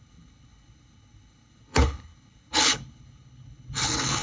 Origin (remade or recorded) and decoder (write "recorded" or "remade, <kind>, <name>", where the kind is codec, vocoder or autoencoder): remade, codec, HILCodec